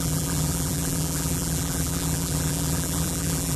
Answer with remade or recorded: remade